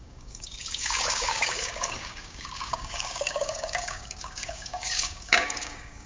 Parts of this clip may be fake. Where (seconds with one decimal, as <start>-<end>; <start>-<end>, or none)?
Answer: 0.0-6.1